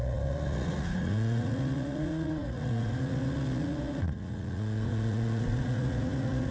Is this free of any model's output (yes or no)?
no